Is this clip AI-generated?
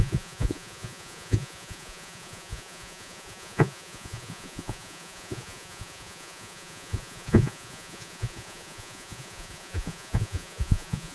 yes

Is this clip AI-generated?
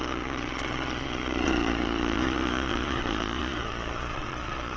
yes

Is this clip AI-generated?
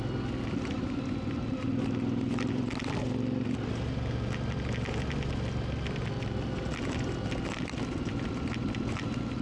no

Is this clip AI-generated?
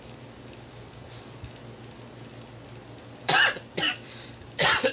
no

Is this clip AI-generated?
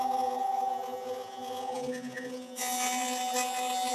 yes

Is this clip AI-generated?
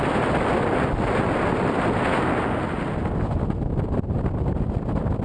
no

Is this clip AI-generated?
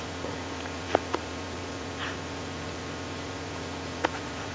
yes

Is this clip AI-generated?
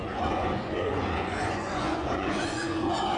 yes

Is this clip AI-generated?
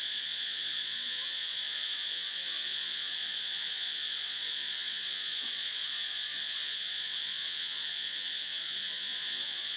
yes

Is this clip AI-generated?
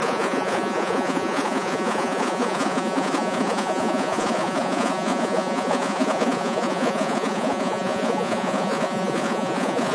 yes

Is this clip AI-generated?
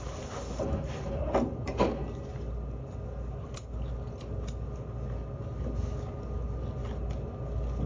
no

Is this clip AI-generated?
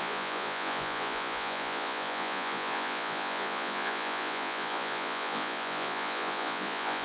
yes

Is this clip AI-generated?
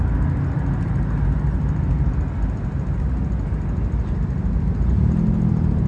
no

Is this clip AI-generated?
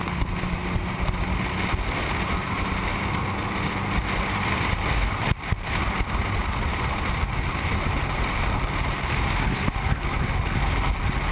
no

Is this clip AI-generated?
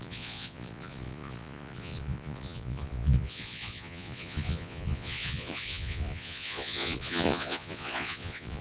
yes